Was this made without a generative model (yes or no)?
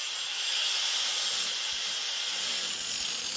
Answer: yes